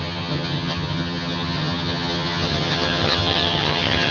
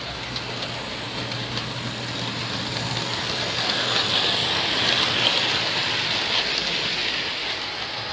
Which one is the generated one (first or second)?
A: first